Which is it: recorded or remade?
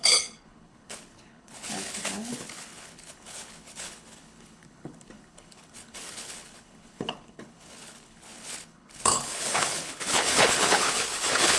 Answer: remade